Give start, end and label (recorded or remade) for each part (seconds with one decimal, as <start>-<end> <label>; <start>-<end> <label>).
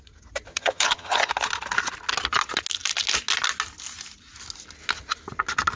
0.0-0.5 recorded; 0.5-1.3 remade; 1.3-5.8 recorded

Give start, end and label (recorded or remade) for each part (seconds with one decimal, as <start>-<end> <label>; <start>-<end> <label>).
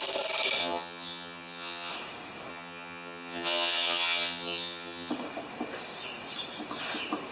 0.0-0.6 recorded; 0.6-1.9 remade; 1.9-2.5 recorded; 2.5-5.1 remade; 5.1-7.3 recorded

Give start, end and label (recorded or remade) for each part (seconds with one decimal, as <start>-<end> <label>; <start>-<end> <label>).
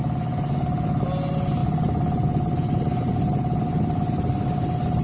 0.0-5.0 recorded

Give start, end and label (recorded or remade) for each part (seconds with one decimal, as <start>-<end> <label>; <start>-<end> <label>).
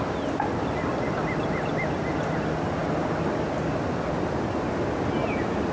0.0-5.7 recorded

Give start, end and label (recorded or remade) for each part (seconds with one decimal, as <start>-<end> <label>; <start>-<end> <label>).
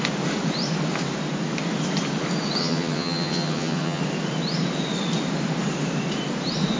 0.0-2.6 recorded; 2.6-4.0 remade; 4.0-6.8 recorded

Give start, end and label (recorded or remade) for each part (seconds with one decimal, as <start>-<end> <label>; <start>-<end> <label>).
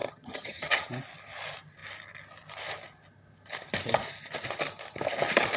0.0-0.9 remade; 0.9-5.6 recorded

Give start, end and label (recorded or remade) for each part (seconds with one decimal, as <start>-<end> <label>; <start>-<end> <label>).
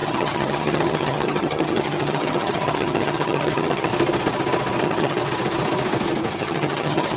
0.0-3.9 remade; 3.9-4.8 recorded; 4.8-5.2 remade; 5.2-6.3 recorded; 6.3-7.2 remade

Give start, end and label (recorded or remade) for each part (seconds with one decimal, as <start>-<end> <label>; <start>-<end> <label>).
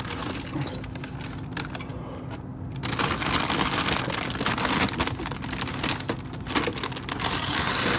0.0-8.0 recorded